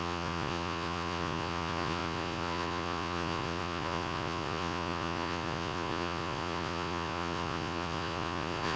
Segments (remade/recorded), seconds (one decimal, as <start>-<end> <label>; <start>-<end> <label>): 0.0-8.8 remade